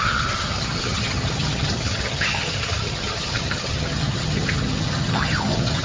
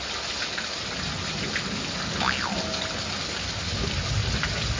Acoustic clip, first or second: second